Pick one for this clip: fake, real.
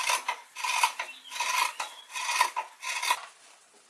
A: real